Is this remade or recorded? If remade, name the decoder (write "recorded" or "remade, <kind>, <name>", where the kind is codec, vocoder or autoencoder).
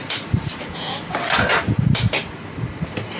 recorded